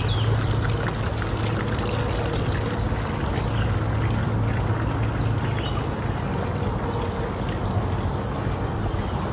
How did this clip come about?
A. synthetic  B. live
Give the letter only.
B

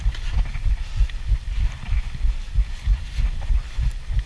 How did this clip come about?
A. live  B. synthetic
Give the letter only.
A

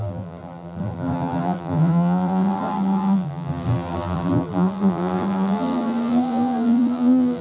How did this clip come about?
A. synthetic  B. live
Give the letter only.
A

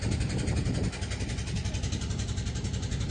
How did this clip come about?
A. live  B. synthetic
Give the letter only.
A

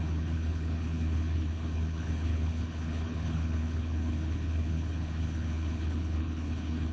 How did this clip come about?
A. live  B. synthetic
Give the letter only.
B